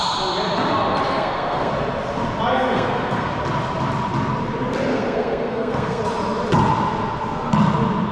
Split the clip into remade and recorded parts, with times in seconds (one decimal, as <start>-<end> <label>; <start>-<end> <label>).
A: 0.0-1.1 recorded; 1.1-1.7 remade; 1.7-2.5 recorded; 2.5-3.3 remade; 3.3-4.9 recorded; 4.9-6.0 remade; 6.0-8.1 recorded